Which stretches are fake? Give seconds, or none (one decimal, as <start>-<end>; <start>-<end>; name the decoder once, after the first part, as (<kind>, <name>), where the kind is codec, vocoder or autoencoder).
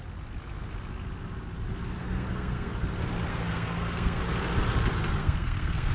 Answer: 2.0-2.7 (codec, SNAC); 3.3-4.2; 5.2-5.9